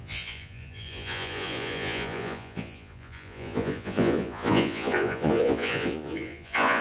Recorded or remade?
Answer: remade